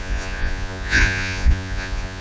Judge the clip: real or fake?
fake